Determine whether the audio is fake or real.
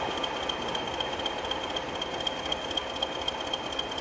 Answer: real